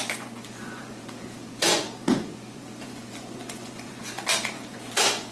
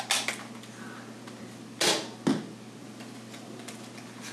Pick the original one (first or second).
second